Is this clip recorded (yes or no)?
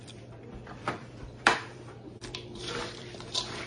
no